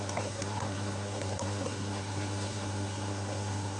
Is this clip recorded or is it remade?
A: remade